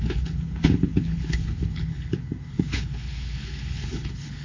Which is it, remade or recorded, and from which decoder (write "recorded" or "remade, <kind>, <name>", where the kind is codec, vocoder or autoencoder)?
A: remade, codec, HILCodec